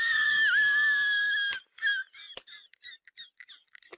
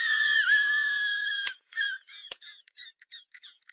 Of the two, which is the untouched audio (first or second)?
first